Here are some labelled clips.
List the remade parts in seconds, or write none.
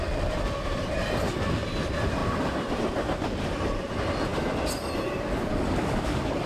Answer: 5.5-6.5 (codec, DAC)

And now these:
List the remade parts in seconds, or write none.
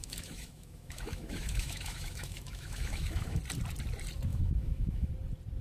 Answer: 0.0-3.4 (autoencoder, DAC-VAE); 4.3-5.1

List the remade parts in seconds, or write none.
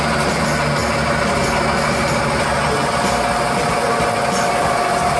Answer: none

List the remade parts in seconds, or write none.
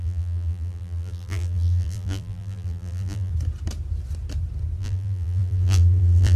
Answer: 0.0-3.3 (vocoder, BigVGAN v2); 4.8-6.4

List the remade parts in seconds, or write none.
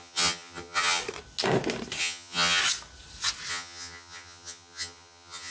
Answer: 0.0-1.0 (vocoder, HiFi-GAN); 2.0-2.6; 3.5-5.5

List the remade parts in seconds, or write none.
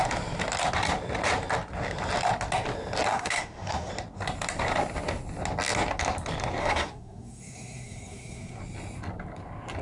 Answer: 3.1-3.9 (codec, SNAC); 6.6-8.6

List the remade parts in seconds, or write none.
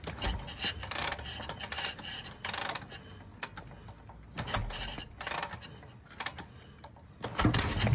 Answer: 1.0-1.6 (vocoder, BigVGAN v2)